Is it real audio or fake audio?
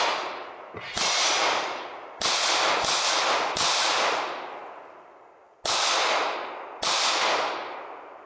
real